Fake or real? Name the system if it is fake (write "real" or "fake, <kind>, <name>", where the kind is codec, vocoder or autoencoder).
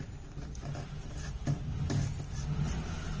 real